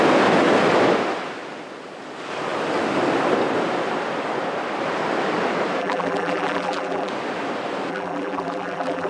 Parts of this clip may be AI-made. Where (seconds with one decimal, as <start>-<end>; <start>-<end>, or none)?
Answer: 5.8-7.1; 7.9-9.1